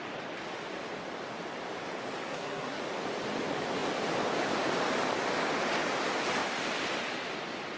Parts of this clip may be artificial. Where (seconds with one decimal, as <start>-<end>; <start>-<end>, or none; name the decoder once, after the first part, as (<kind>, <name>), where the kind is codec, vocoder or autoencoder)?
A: 2.3-2.8 (codec, SNAC)